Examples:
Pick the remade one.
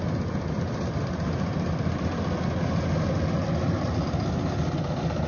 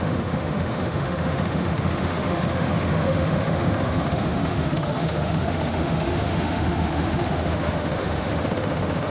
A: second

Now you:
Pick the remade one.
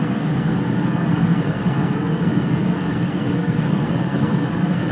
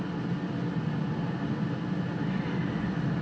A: first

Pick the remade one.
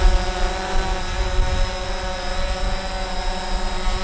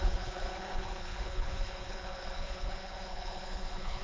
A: second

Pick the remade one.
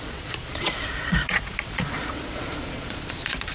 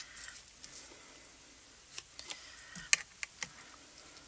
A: first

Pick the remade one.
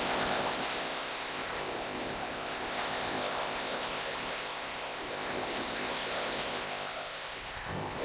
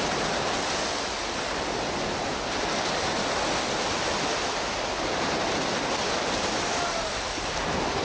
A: first